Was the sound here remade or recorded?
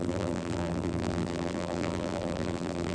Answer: remade